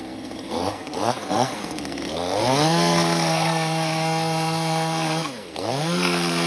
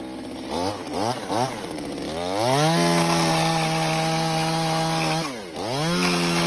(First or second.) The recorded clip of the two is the second